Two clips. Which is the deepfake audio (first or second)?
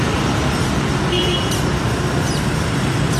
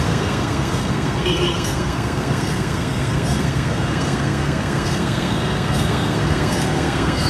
second